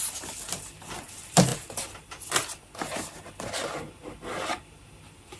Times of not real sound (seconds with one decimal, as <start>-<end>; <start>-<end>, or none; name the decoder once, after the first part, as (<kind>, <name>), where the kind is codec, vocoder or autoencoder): none

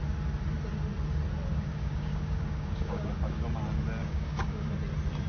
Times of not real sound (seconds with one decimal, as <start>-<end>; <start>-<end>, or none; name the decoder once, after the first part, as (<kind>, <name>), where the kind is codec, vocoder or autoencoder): 1.5-3.1 (codec, DAC); 4.0-4.7

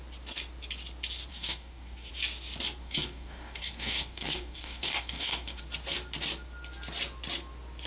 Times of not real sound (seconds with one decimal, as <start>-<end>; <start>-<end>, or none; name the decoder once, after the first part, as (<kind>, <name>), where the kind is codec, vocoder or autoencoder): 1.3-2.1 (codec, DAC); 2.8-5.6

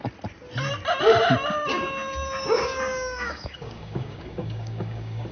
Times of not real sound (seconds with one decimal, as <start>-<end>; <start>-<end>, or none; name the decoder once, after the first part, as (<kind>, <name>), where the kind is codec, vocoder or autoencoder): 1.7-5.3 (codec, DAC)

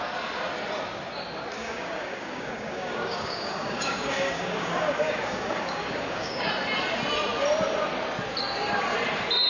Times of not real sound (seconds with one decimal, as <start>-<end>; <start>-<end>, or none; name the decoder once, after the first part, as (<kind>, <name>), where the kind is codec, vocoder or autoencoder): 1.6-6.5 (codec, DAC)

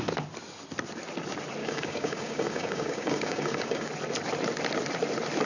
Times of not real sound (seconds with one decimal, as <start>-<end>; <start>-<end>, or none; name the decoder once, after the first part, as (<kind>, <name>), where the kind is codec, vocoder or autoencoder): 1.6-3.9 (codec, DAC)

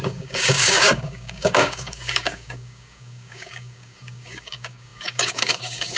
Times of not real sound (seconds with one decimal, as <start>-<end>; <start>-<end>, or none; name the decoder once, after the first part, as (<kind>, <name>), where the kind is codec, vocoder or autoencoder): 0.0-6.0 (codec, DAC)